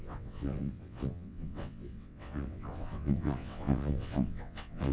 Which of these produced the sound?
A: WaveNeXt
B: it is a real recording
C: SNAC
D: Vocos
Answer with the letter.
A